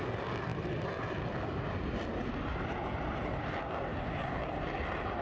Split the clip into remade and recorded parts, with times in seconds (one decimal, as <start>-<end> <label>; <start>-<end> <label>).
0.0-0.5 recorded; 0.5-1.6 remade; 1.6-2.9 recorded; 2.9-3.6 remade; 3.6-5.2 recorded